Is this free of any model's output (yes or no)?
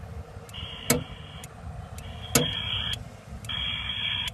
yes